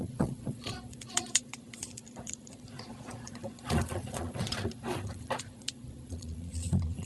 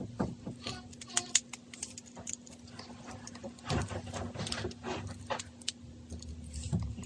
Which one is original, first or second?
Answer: second